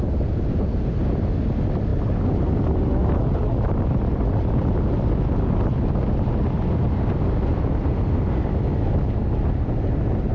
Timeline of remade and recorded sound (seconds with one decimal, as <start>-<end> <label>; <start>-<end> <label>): 0.0-10.3 recorded

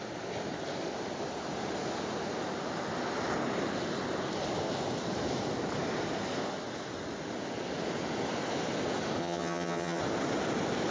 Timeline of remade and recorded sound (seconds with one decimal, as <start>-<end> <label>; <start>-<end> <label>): 0.0-9.2 recorded; 9.2-10.0 remade; 10.0-10.9 recorded

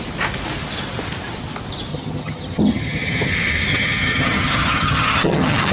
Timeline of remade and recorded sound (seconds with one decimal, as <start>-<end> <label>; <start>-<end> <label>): 0.0-1.9 recorded; 1.9-3.3 remade; 3.3-3.7 recorded; 3.7-5.7 remade

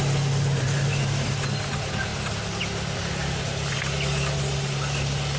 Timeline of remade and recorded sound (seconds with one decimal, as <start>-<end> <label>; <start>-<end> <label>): 0.0-5.4 recorded